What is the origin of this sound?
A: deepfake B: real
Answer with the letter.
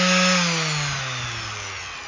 B